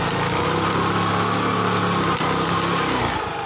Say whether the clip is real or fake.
real